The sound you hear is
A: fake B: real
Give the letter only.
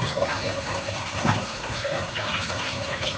A